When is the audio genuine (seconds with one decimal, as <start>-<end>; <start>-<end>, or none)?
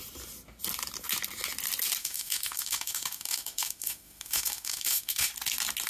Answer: 0.0-2.0; 5.3-5.9